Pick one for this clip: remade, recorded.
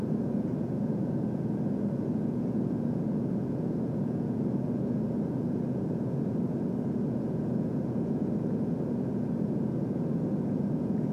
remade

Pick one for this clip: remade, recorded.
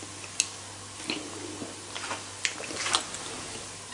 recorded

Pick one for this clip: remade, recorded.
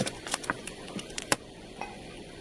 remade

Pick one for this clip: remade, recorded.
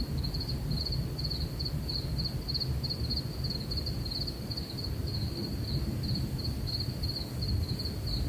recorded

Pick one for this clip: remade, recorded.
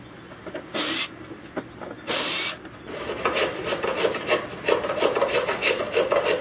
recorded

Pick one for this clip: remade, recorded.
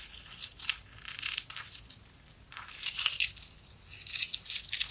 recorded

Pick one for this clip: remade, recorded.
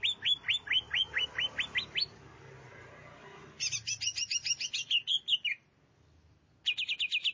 recorded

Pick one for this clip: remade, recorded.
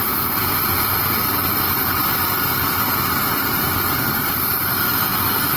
recorded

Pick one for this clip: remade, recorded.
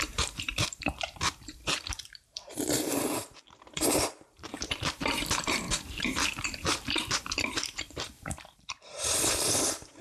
remade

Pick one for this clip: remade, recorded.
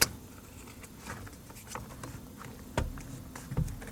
recorded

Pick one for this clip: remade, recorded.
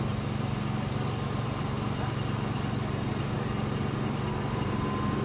recorded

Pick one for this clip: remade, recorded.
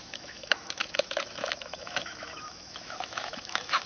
remade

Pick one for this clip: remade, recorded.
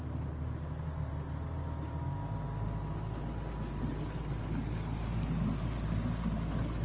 recorded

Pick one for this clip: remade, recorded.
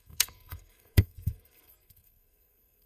remade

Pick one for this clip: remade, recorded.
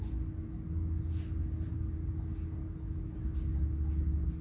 recorded